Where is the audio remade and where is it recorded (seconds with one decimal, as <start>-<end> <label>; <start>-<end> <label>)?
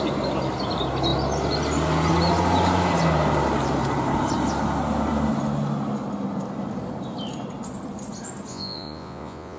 0.0-8.5 recorded; 8.5-9.6 remade